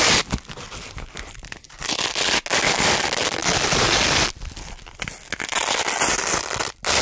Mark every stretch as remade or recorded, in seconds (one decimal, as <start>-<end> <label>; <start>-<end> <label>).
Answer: 0.0-7.0 recorded